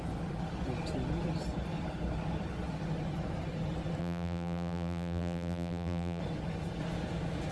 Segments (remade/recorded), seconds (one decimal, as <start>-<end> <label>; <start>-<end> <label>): 0.0-4.0 recorded; 4.0-6.2 remade; 6.2-7.5 recorded